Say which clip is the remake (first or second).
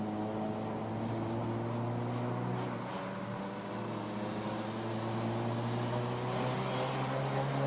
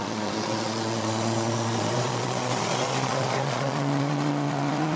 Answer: second